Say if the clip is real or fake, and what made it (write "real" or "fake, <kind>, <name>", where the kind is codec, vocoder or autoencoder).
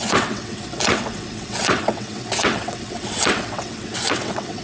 fake, vocoder, WaveNeXt